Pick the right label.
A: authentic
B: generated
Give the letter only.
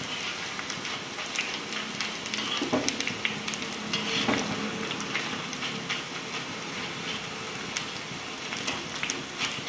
A